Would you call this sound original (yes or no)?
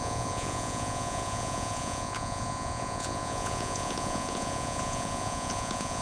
no